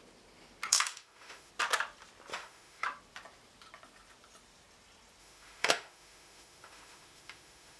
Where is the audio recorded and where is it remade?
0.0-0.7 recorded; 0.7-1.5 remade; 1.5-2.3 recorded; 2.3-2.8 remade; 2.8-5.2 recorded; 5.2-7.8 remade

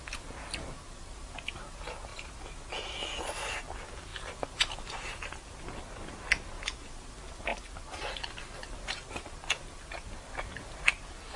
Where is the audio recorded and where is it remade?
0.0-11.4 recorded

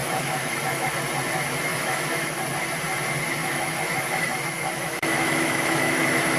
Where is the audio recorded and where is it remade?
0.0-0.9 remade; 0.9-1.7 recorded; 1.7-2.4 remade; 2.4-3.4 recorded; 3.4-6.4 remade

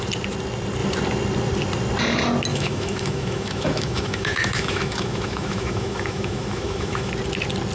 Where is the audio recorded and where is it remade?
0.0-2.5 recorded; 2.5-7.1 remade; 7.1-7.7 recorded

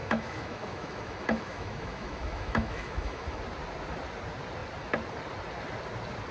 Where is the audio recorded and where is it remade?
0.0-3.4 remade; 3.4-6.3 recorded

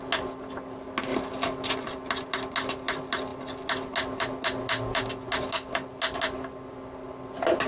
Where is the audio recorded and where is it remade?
0.0-7.7 recorded

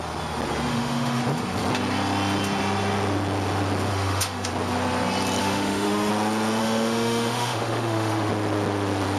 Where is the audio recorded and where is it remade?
0.0-0.7 recorded; 0.7-1.2 remade; 1.2-3.9 recorded; 3.9-4.5 remade; 4.5-5.4 recorded; 5.4-6.1 remade; 6.1-6.6 recorded; 6.6-8.3 remade; 8.3-9.2 recorded